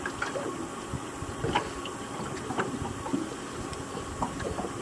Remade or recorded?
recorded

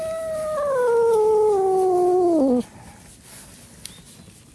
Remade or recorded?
recorded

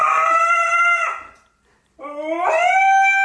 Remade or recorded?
recorded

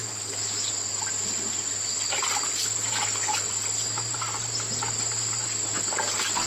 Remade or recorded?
recorded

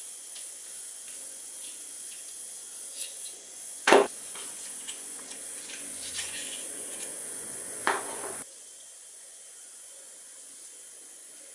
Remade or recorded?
remade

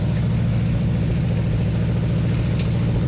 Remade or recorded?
recorded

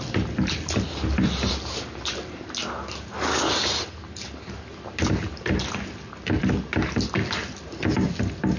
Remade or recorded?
recorded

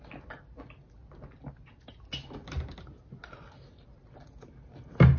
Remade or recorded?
recorded